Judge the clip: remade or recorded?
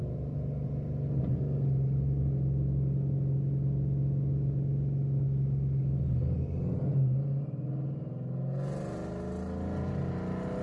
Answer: recorded